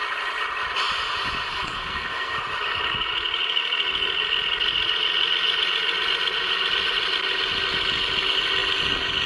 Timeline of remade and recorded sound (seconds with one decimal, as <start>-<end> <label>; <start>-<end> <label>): 0.0-1.5 recorded; 1.5-2.4 remade; 2.4-9.3 recorded